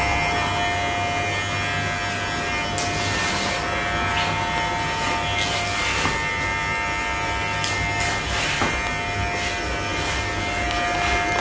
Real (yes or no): yes